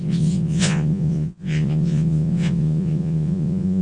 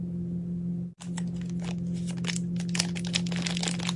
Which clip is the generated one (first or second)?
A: first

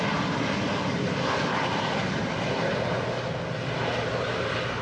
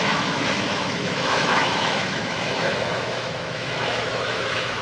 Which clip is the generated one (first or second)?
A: second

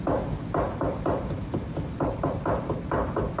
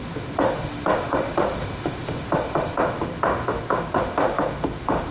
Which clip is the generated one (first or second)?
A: second